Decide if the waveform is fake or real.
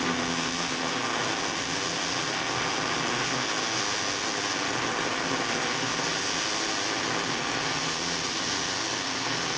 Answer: real